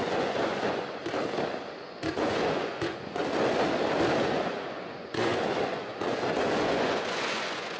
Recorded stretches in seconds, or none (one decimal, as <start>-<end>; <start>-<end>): 1.0-1.7; 3.2-4.2